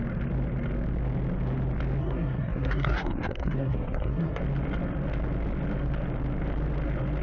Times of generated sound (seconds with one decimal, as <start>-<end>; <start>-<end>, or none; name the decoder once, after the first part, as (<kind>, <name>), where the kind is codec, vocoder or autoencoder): 2.0-4.4 (codec, SNAC)